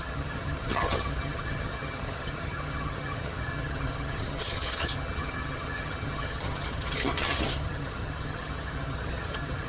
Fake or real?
fake